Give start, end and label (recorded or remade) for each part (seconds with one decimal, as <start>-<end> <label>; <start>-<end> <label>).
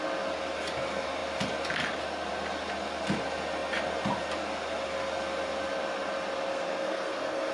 0.0-6.5 recorded; 6.5-7.5 remade